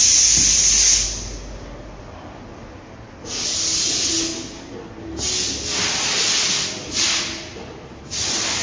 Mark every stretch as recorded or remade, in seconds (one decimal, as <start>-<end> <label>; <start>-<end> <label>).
0.0-8.6 recorded